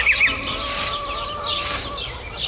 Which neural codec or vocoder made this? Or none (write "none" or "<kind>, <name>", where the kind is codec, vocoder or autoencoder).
none